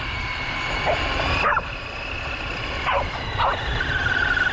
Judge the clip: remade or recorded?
recorded